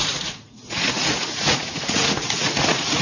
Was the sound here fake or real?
fake